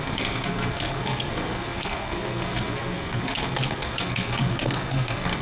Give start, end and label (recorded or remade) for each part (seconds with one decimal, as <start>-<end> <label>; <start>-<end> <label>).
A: 0.0-5.4 remade